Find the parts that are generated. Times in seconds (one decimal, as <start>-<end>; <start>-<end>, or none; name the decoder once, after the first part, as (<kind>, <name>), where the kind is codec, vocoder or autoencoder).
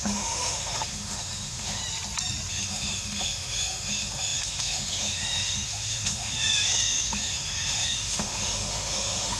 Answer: 0.0-1.8 (autoencoder, DAC-VAE); 2.5-9.4